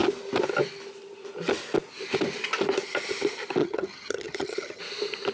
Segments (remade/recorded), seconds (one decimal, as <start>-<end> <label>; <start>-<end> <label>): 0.0-3.6 recorded; 3.6-4.8 remade; 4.8-5.3 recorded